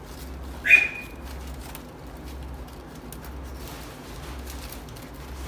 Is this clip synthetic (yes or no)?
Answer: no